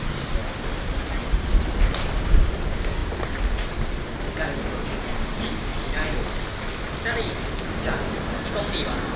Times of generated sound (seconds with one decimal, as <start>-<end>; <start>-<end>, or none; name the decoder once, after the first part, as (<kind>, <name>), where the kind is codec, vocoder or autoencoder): 0.0-9.2 (vocoder, BigVGAN v2)